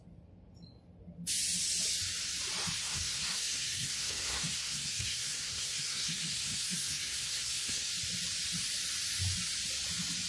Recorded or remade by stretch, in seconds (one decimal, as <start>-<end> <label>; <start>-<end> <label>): 0.0-2.8 recorded; 2.8-7.9 remade; 7.9-10.3 recorded